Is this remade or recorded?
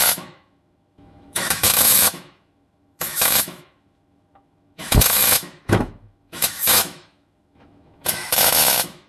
remade